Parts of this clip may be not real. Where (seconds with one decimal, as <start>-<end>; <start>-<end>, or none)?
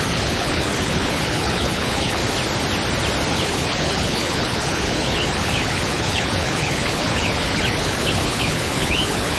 0.0-2.2; 3.3-9.4